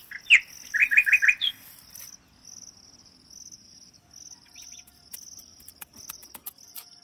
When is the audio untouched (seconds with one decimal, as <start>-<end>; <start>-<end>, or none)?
0.0-0.8; 1.5-5.4; 6.5-7.0